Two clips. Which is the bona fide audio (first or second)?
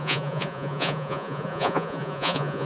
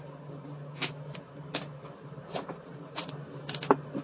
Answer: second